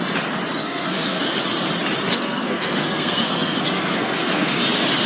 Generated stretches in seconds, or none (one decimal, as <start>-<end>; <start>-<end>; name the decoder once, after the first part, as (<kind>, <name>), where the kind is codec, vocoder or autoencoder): 0.6-1.2 (codec, SNAC); 2.1-4.6